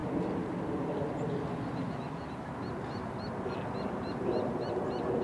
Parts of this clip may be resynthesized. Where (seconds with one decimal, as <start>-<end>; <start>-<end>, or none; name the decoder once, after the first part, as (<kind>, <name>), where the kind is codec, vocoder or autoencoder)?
none